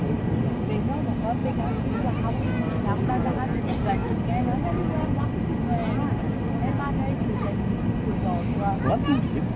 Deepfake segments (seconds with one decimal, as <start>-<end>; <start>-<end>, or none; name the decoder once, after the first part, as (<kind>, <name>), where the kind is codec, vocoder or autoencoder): 1.4-2.3 (vocoder, BigVGAN v2)